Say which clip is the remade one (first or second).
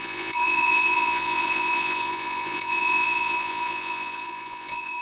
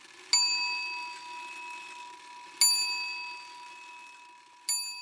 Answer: first